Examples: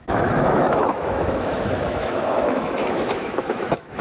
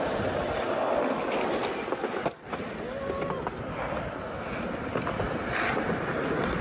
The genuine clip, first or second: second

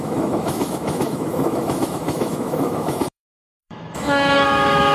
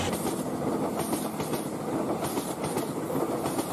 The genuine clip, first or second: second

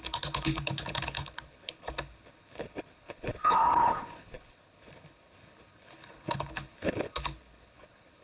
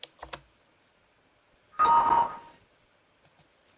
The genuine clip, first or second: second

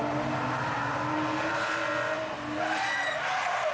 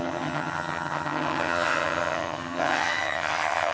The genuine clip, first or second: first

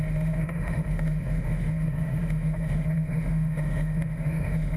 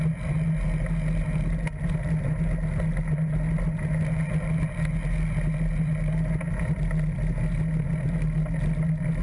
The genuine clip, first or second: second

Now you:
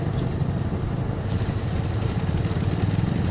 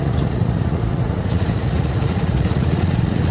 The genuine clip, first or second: first